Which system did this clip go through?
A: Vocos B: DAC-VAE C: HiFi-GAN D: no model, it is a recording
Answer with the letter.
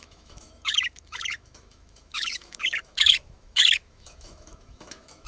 B